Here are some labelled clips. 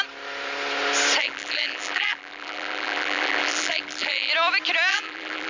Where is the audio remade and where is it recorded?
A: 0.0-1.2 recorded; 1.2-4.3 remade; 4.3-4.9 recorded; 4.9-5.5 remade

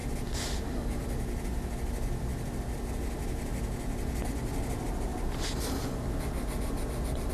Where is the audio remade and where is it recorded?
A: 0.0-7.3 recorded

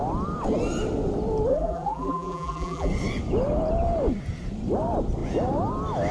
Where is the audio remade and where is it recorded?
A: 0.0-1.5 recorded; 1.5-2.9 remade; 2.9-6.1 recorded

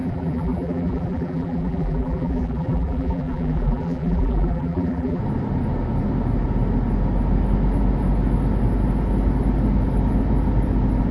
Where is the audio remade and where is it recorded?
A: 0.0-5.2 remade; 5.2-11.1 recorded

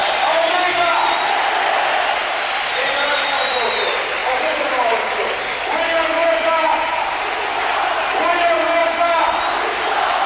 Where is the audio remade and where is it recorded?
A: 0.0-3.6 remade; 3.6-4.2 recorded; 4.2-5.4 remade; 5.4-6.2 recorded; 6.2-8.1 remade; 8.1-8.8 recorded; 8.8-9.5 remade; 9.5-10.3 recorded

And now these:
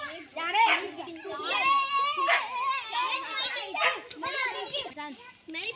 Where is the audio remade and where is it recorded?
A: 0.0-5.8 recorded

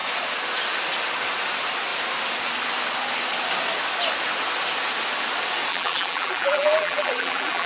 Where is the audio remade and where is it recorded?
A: 0.0-5.7 recorded; 5.7-7.7 remade